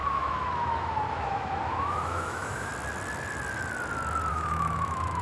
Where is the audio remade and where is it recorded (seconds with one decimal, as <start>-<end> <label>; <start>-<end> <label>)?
0.0-2.7 remade; 2.7-4.3 recorded; 4.3-5.2 remade